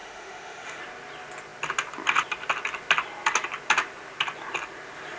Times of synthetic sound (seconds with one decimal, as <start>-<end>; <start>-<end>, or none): 0.0-0.8